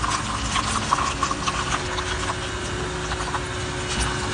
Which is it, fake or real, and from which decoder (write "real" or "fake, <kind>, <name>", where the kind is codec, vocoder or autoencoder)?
real